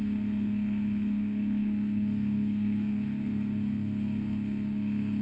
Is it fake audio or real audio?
fake